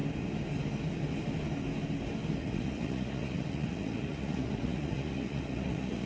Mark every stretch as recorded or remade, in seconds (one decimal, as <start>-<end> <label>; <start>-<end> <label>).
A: 0.0-2.4 recorded; 2.4-6.1 remade